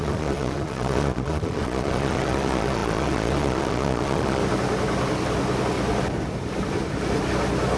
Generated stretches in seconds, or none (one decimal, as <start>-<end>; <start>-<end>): 0.0-4.4